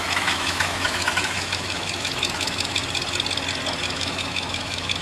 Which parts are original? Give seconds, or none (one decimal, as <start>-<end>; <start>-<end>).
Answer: 2.8-3.8